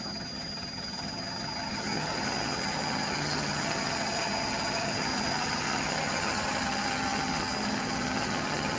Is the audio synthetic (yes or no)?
yes